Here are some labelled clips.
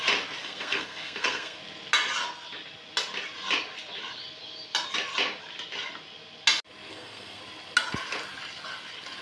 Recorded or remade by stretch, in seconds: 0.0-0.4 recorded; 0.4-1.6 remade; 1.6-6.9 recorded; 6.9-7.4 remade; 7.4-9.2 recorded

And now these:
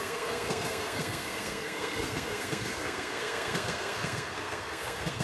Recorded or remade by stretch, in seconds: 0.0-5.2 remade